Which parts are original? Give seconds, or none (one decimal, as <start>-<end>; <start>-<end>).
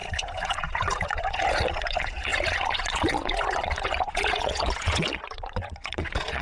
none